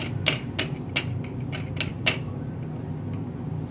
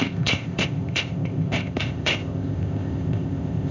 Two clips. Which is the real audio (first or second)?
first